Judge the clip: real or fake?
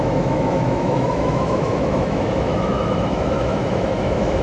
fake